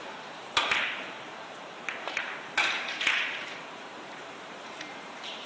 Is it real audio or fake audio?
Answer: fake